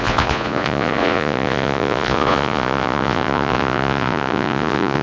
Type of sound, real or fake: fake